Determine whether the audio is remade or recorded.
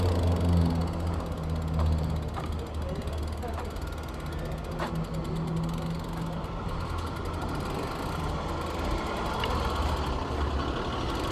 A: recorded